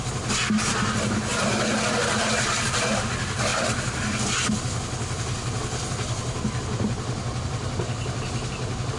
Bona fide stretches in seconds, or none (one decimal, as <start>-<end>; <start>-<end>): 0.0-9.0